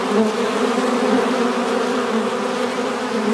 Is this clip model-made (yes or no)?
no